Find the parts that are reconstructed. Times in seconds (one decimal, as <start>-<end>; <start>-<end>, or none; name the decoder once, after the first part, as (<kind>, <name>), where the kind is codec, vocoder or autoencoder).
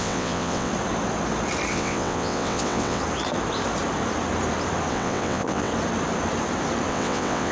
0.0-0.7 (vocoder, WaveNeXt); 1.7-3.0; 4.9-5.7; 6.9-7.5